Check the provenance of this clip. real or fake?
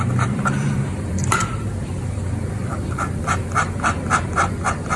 fake